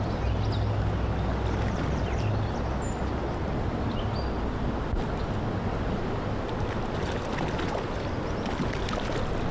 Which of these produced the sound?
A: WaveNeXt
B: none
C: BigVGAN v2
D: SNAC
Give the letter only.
B